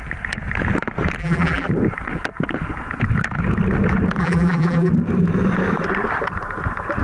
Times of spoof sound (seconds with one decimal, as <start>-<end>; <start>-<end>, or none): 1.2-1.7; 4.2-4.9